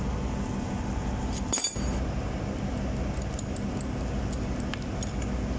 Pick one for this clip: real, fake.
real